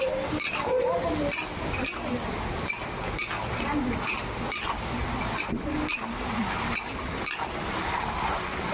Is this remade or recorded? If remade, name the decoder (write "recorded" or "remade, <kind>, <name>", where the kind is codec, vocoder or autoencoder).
recorded